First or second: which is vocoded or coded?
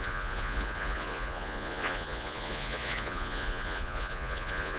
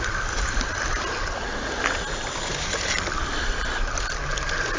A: first